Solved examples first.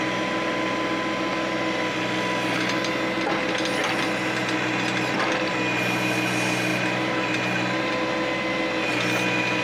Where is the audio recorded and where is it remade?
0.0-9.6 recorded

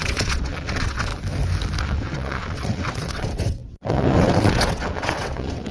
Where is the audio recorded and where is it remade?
0.0-1.1 remade; 1.1-1.8 recorded; 1.8-5.7 remade

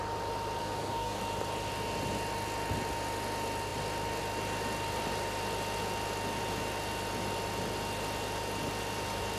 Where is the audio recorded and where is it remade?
0.0-0.6 recorded; 0.6-1.2 remade; 1.2-9.4 recorded

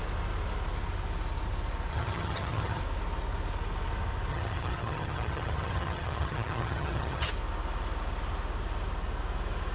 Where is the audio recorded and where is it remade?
0.0-1.9 recorded; 1.9-2.8 remade; 2.8-4.3 recorded; 4.3-7.3 remade; 7.3-9.7 recorded

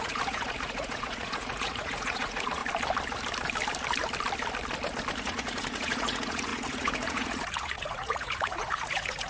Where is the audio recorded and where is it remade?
0.0-2.6 remade; 2.6-5.2 recorded; 5.2-9.3 remade

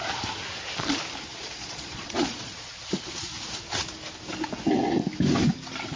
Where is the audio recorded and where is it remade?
0.0-1.3 recorded; 1.3-2.7 remade; 2.7-6.0 recorded

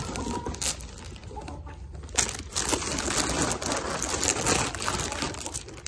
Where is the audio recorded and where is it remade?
0.0-5.9 recorded

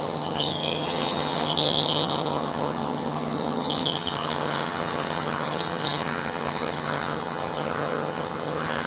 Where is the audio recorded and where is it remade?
0.0-8.9 remade